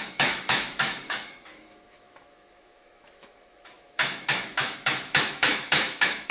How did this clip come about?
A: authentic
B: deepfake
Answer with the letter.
B